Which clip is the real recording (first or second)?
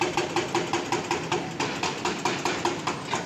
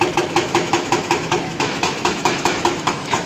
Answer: first